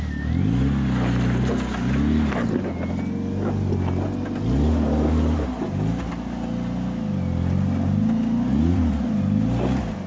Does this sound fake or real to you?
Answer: real